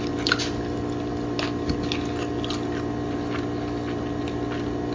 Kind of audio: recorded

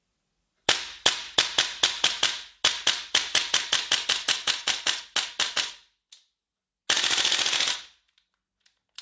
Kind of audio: recorded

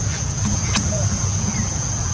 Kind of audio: remade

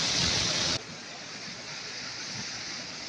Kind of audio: remade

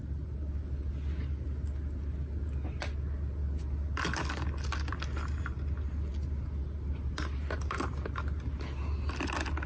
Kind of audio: recorded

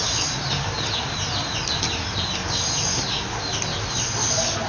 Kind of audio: recorded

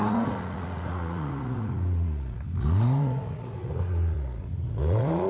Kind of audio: remade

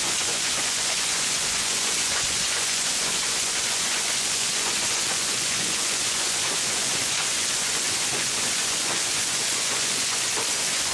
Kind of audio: remade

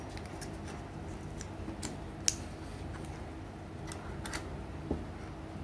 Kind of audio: recorded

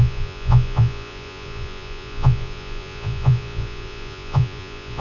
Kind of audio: remade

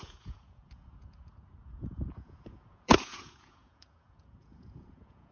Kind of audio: remade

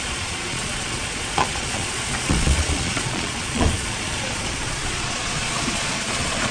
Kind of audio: remade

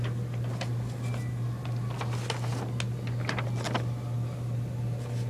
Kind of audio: recorded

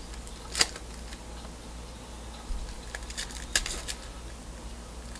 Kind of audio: recorded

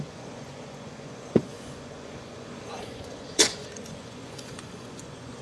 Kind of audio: remade